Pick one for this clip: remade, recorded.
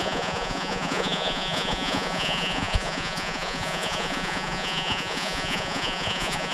remade